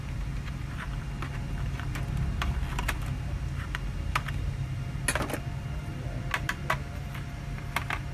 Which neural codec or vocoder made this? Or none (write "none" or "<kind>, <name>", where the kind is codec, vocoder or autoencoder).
none